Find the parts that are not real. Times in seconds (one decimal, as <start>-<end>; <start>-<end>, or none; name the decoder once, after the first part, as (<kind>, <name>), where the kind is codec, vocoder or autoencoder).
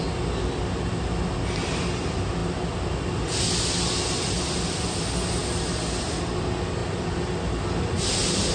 none